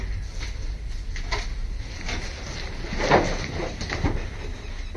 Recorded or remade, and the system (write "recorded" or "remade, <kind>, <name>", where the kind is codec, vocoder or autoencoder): recorded